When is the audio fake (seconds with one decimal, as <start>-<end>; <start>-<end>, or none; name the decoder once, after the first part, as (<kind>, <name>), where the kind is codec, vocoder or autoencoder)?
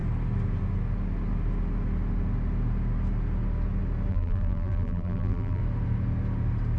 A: 4.1-5.6 (vocoder, BigVGAN v2)